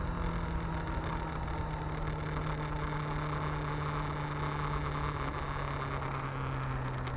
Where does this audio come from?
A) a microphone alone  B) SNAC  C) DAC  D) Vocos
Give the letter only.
A